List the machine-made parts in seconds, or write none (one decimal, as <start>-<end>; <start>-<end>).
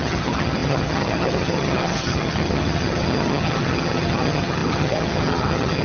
0.0-5.8